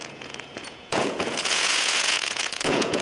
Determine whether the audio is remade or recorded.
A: remade